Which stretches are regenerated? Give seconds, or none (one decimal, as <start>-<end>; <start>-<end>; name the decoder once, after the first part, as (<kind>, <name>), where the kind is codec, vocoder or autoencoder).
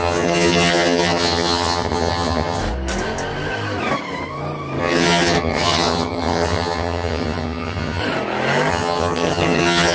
0.0-2.6 (vocoder, HiFi-GAN); 4.8-8.0; 8.7-9.9